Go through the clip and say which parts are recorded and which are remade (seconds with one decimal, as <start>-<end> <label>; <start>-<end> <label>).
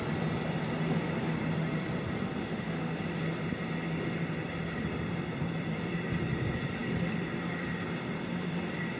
0.0-2.4 recorded; 2.4-3.0 remade; 3.0-9.0 recorded